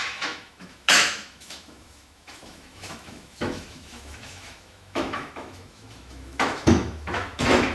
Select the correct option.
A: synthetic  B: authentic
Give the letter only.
A